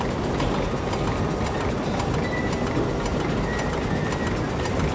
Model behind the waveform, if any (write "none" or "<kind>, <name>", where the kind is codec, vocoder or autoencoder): none